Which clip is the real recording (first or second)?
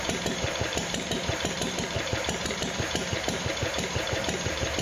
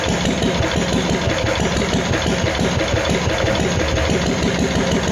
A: second